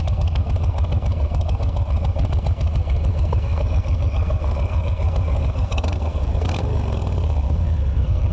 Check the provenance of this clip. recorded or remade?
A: remade